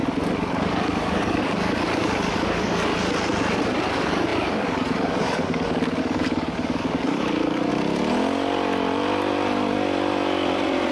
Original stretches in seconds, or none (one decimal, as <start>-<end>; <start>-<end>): 0.0-0.5; 2.9-3.9; 7.7-10.9